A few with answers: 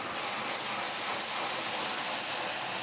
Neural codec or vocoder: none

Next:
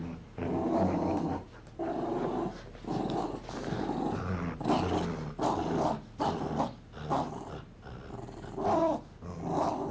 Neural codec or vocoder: none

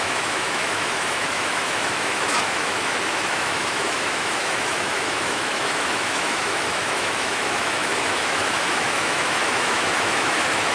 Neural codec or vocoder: autoencoder, DAC-VAE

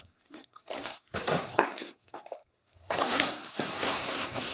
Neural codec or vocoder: codec, SNAC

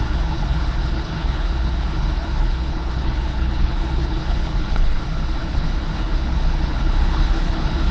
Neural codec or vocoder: codec, HILCodec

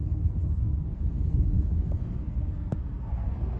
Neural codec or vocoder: codec, SNAC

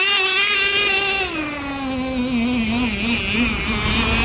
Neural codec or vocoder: none